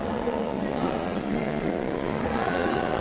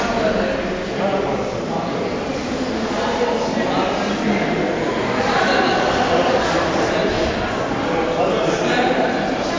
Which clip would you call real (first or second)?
second